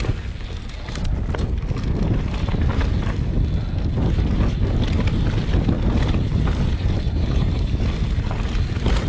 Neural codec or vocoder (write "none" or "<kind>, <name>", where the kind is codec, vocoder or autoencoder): none